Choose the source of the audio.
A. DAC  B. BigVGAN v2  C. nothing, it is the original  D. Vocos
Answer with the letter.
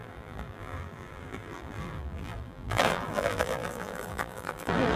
B